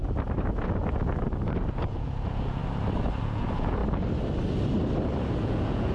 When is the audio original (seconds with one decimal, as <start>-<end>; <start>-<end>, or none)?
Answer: 0.0-1.8; 2.6-3.2; 3.8-5.4